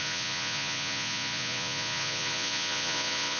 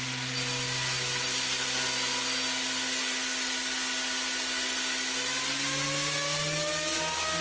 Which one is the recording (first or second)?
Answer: second